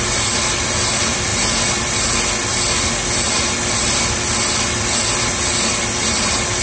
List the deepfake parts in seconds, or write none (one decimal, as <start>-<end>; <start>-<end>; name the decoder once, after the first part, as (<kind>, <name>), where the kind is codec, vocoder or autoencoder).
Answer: none